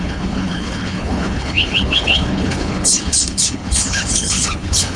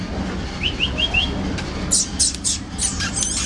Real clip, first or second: second